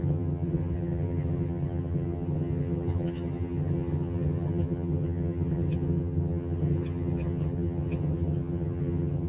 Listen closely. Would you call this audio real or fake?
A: fake